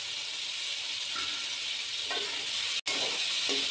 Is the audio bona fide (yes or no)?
yes